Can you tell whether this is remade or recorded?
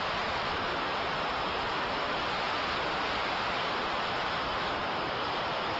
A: remade